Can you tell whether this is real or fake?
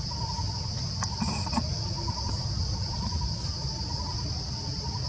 real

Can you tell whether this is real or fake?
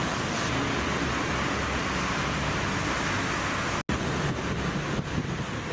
real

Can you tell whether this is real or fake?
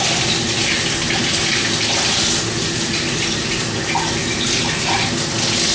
real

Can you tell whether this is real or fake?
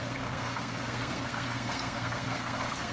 fake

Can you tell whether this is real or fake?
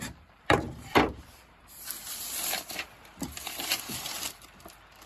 fake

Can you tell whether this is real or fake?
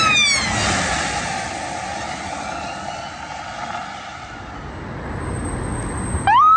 real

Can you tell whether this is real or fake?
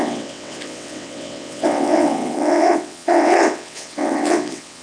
fake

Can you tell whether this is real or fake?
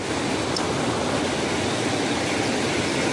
real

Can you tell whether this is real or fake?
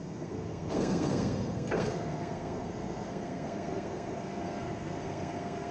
fake